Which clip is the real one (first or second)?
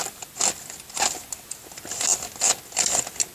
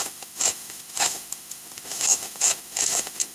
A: first